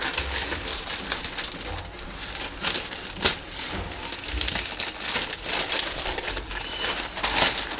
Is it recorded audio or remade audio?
recorded